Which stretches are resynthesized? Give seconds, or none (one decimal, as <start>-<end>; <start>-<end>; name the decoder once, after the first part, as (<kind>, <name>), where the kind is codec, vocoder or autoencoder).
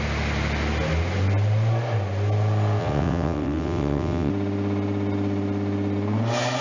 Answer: 2.8-4.3 (vocoder, WaveNeXt)